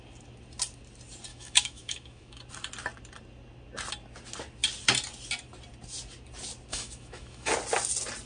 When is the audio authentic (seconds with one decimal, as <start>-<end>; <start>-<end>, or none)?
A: 0.0-1.3; 2.4-6.7; 7.5-8.3